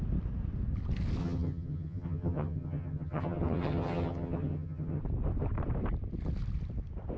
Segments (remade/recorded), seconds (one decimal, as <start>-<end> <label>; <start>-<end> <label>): 0.0-1.2 recorded; 1.2-5.0 remade; 5.0-7.2 recorded